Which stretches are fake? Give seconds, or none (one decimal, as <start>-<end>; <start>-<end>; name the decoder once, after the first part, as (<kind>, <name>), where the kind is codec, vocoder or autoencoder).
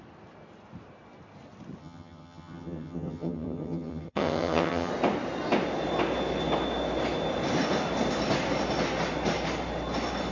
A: 1.8-4.9 (vocoder, HiFi-GAN)